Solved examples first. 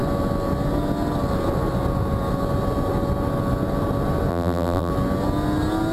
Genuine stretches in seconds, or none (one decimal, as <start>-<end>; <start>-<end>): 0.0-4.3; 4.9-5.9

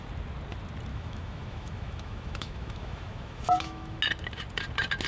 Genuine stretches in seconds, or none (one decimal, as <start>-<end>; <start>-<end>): 0.0-0.9; 4.0-5.1

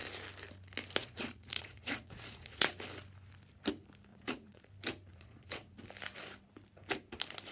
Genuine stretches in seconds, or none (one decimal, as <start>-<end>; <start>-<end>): 0.0-1.0; 2.7-4.1; 4.6-5.1; 5.8-7.5

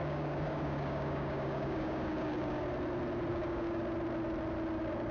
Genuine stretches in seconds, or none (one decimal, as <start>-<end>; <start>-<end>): 2.6-3.3; 3.8-5.1

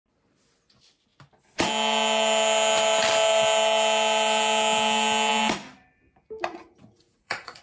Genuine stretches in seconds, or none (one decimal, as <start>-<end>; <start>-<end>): 0.0-6.5

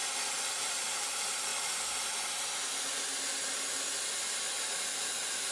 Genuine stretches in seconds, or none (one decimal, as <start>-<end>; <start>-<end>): 0.0-5.5